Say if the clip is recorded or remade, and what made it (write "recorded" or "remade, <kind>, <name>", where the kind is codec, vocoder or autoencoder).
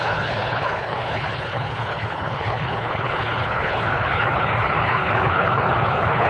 remade, codec, HILCodec